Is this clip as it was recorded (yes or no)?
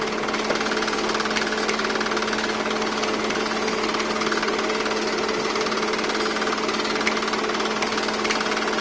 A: yes